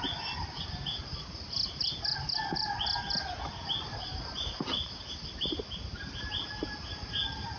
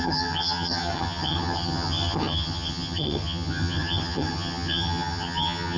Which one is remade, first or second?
second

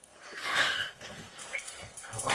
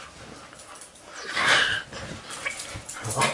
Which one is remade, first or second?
first